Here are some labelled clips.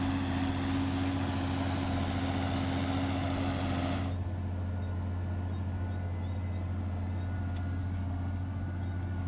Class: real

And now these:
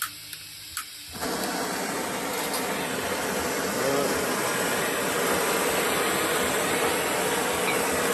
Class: real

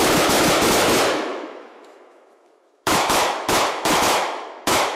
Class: fake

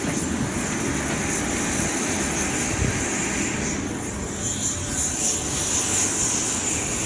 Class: real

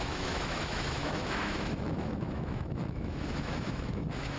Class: fake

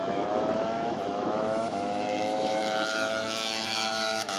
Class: fake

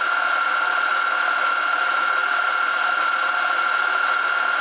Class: real